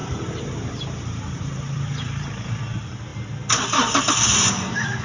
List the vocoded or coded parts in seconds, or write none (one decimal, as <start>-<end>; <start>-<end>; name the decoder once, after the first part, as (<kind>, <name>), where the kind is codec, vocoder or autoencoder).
0.0-2.6 (vocoder, BigVGAN v2)